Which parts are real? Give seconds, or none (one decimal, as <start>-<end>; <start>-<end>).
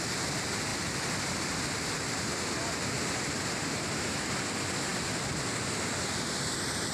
0.0-6.9